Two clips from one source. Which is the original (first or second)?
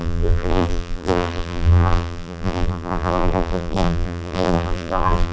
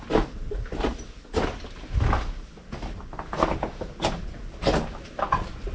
second